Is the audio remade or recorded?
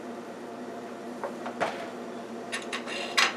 recorded